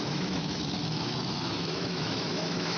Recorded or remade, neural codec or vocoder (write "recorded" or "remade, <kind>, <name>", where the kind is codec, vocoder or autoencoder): remade, autoencoder, DAC-VAE